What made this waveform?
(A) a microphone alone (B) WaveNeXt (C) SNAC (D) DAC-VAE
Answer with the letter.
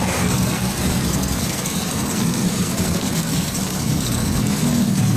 C